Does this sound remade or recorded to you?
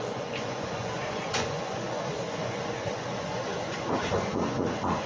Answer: remade